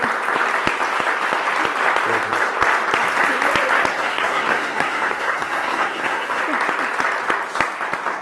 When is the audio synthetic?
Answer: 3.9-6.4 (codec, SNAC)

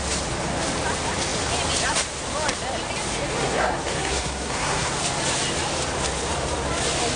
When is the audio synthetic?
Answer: 3.4-4.9 (codec, SNAC)

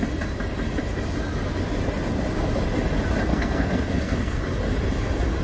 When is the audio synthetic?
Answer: 3.3-4.4 (codec, SNAC)